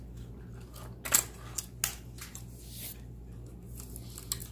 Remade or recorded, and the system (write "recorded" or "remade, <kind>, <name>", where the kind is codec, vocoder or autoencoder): recorded